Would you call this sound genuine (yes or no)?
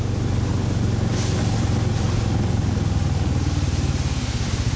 yes